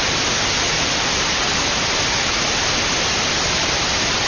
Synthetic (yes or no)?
no